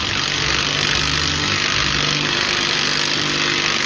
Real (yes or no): yes